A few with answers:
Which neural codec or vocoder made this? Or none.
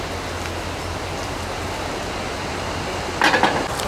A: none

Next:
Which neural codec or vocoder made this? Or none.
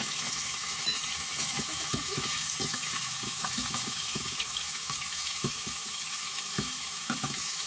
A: autoencoder, DAC-VAE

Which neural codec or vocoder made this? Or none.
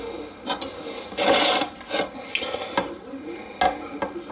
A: none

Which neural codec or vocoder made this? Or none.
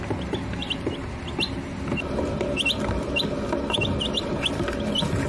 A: none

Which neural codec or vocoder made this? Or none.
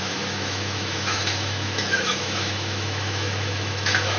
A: autoencoder, DAC-VAE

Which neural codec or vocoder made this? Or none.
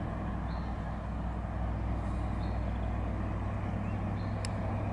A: none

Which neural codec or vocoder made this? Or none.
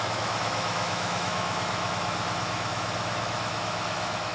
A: autoencoder, DAC-VAE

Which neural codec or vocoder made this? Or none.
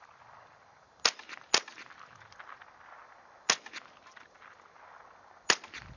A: none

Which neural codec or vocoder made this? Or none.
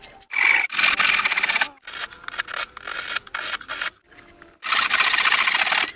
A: none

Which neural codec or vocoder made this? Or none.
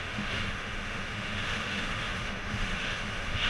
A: autoencoder, DAC-VAE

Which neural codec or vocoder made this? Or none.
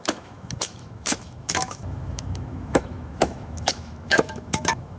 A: autoencoder, DAC-VAE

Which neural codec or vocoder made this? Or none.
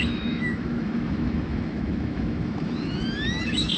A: autoencoder, DAC-VAE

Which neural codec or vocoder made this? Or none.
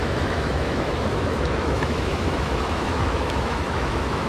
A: autoencoder, DAC-VAE